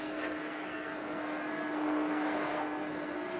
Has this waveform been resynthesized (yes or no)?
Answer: yes